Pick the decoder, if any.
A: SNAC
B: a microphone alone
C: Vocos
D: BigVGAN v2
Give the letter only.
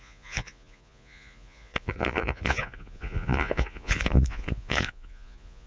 C